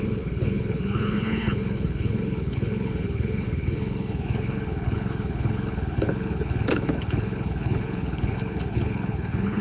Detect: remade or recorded remade